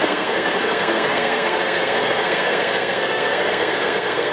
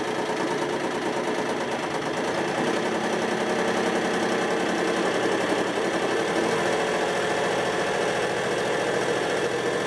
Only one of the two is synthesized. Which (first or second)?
first